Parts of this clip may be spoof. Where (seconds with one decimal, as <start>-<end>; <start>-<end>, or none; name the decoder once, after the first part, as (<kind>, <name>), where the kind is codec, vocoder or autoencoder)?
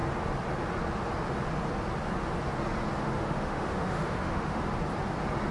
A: 3.0-4.6 (autoencoder, DAC-VAE)